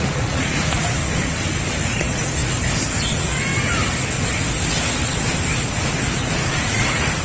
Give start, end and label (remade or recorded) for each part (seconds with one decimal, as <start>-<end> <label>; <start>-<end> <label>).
0.0-1.0 remade; 1.0-1.8 recorded; 1.8-2.4 remade; 2.4-3.0 recorded; 3.0-3.5 remade; 3.5-6.5 recorded; 6.5-7.2 remade